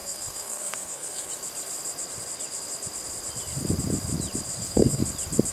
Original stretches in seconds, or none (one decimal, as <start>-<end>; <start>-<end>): 1.3-4.6; 5.0-5.5

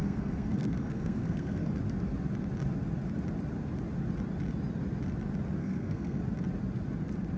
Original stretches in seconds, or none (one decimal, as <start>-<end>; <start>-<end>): 1.7-5.6; 6.2-7.4